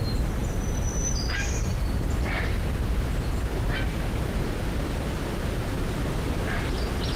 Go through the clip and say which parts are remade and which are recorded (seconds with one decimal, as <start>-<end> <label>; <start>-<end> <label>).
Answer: 0.0-7.2 recorded